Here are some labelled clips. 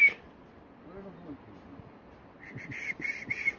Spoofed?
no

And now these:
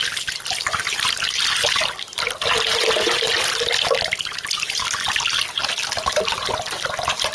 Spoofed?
no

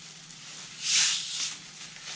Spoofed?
no